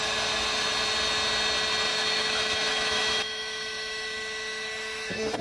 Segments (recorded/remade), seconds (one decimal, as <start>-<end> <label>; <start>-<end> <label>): 0.0-1.9 recorded; 1.9-5.4 remade